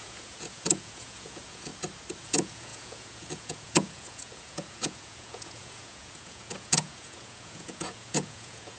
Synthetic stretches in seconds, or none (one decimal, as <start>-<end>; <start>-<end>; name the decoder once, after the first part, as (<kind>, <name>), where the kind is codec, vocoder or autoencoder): 0.0-1.7 (vocoder, Vocos); 2.2-8.8